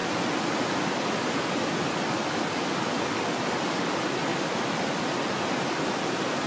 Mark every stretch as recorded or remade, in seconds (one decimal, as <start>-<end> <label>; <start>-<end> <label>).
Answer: 0.0-6.5 recorded